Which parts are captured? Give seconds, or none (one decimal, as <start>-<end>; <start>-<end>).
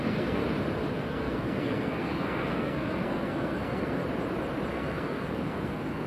0.4-0.9; 4.0-4.7